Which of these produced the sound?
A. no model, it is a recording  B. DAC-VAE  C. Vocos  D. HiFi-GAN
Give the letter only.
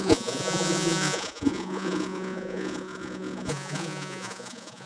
C